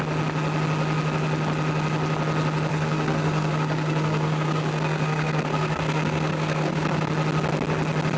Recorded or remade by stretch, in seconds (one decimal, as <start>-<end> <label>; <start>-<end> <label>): 0.0-2.7 recorded; 2.7-7.1 remade; 7.1-8.2 recorded